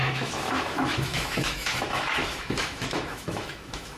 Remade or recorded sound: remade